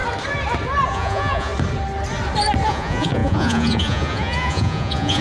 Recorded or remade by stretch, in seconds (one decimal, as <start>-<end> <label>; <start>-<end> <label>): 0.0-0.9 recorded; 0.9-1.5 remade; 1.5-2.7 recorded; 2.7-5.2 remade